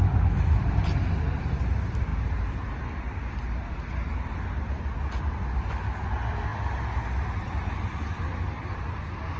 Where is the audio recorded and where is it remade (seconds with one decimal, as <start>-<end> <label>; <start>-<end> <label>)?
0.0-9.4 recorded